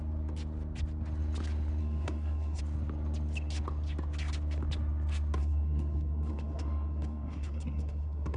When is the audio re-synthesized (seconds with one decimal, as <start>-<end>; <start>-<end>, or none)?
1.8-2.6; 5.4-8.4